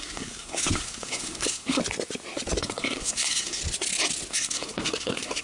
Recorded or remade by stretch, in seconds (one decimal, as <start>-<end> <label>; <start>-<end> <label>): 0.0-1.8 remade; 1.8-2.6 recorded; 2.6-3.6 remade; 3.6-4.3 recorded; 4.3-5.4 remade